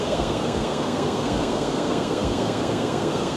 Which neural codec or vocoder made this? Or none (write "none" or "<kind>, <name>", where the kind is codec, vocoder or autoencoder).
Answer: codec, SNAC